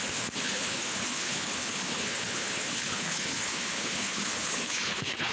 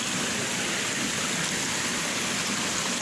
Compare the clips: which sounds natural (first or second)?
second